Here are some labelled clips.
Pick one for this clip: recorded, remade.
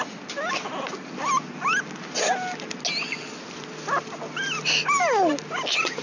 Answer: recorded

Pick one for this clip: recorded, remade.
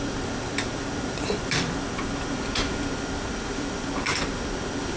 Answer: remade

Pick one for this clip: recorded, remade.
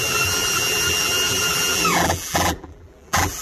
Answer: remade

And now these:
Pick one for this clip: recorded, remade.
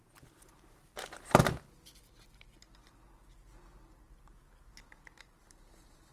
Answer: recorded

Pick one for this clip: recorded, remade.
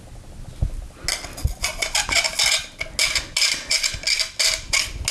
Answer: recorded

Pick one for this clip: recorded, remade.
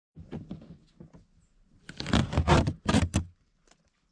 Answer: recorded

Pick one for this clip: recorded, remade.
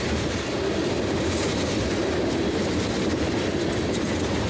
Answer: recorded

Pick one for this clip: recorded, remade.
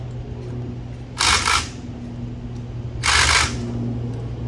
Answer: recorded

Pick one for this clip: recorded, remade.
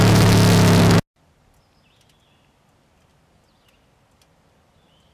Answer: recorded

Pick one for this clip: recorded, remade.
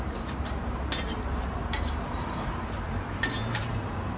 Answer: remade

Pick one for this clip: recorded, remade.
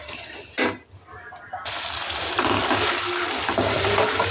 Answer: remade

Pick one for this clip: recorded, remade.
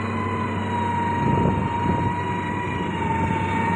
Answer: recorded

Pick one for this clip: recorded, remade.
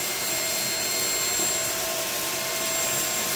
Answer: recorded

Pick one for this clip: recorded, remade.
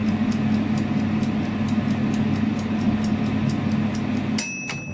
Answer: recorded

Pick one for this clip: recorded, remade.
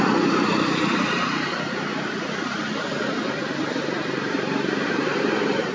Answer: remade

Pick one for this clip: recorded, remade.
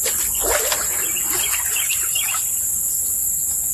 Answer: recorded